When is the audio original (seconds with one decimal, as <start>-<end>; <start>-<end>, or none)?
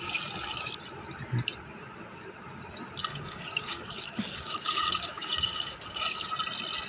0.0-3.1; 6.3-6.9